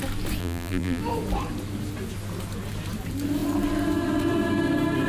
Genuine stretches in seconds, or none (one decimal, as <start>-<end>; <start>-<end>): 0.0-0.4; 1.0-5.1